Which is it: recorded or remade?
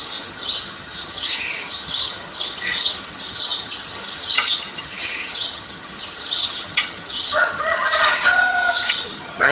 remade